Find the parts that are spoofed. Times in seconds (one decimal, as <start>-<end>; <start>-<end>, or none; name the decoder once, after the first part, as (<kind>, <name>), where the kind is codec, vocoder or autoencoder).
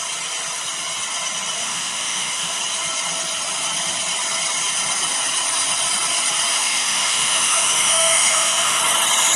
1.6-2.6 (autoencoder, DAC-VAE); 6.5-8.8